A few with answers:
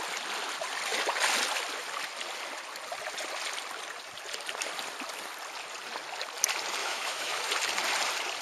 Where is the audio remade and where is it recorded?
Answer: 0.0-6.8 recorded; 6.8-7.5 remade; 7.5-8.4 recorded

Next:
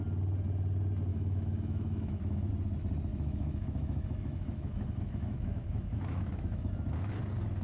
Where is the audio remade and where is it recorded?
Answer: 0.0-1.1 recorded; 1.1-2.5 remade; 2.5-3.1 recorded; 3.1-7.1 remade; 7.1-7.6 recorded